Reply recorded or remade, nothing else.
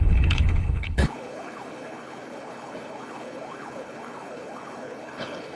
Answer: remade